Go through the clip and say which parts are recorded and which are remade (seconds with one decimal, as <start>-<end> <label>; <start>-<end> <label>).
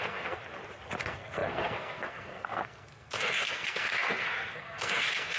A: 0.0-0.4 remade; 0.4-1.0 recorded; 1.0-5.4 remade